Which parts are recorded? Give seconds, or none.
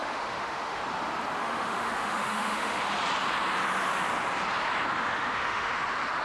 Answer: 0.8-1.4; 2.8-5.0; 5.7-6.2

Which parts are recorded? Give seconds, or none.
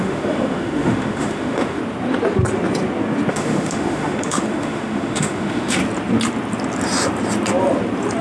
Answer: 1.8-3.3; 5.8-8.2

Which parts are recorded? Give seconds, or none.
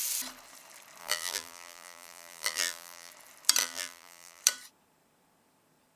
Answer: 0.0-1.0; 3.1-3.6; 4.4-6.0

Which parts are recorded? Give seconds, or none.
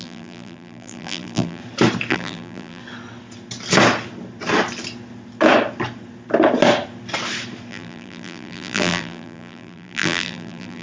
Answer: 1.6-2.1; 2.8-7.7